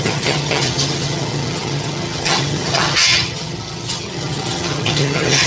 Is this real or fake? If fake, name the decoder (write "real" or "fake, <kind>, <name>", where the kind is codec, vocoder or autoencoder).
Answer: fake, vocoder, HiFi-GAN